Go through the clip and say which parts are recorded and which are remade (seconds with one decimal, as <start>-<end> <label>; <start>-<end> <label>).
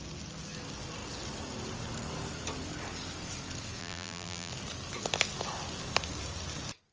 0.0-3.8 recorded; 3.8-4.5 remade; 4.5-6.9 recorded